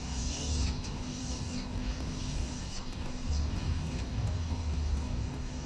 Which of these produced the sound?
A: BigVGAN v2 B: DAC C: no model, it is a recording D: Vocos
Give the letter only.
B